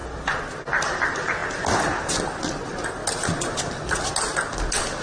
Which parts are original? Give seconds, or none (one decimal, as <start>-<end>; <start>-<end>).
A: 0.0-5.0